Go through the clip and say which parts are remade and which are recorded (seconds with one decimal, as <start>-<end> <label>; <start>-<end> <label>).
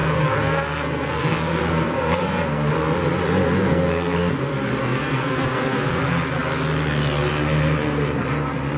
0.0-2.7 remade; 2.7-3.6 recorded; 3.6-4.3 remade; 4.3-4.8 recorded; 4.8-6.0 remade; 6.0-8.8 recorded